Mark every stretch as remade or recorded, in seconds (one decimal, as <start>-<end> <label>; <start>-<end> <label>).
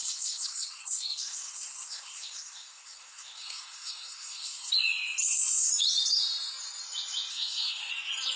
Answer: 0.0-4.7 remade; 4.7-5.2 recorded; 5.2-5.7 remade; 5.7-7.3 recorded; 7.3-7.9 remade; 7.9-8.4 recorded